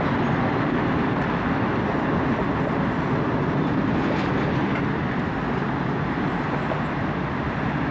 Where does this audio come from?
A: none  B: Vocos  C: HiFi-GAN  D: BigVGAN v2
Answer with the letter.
A